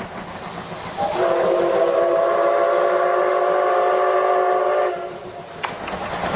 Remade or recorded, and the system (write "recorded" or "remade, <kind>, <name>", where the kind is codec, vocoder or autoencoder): recorded